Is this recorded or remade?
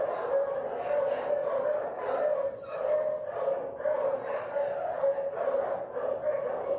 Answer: recorded